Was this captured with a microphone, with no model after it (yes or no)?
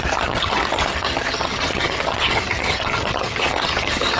no